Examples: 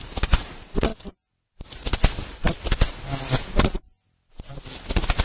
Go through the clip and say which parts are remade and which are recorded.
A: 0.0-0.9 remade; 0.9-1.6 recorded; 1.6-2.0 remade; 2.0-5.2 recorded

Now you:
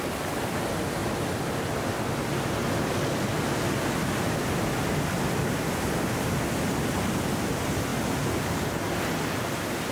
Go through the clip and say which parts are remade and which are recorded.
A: 0.0-9.9 recorded